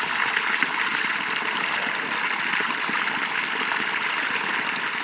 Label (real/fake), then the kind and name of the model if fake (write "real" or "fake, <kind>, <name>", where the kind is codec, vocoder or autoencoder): real